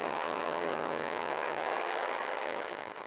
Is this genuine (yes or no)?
no